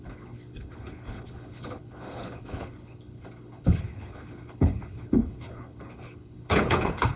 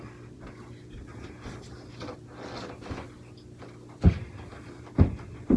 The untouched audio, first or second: second